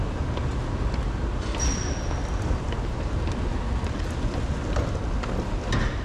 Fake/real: real